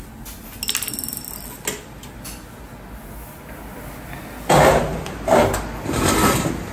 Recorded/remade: recorded